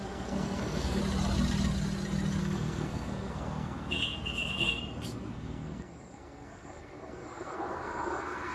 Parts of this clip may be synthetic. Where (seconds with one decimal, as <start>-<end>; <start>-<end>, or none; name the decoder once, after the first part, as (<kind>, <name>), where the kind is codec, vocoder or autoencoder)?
0.0-1.0 (codec, SNAC); 2.4-8.5